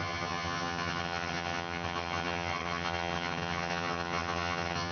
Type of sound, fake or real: fake